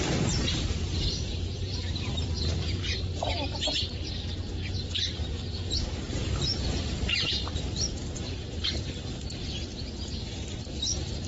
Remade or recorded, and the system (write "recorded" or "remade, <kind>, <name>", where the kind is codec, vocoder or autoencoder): remade, vocoder, BigVGAN v2